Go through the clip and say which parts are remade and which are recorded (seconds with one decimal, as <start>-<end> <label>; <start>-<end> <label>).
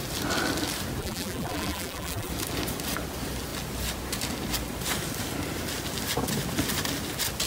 0.0-1.0 recorded; 1.0-2.3 remade; 2.3-7.5 recorded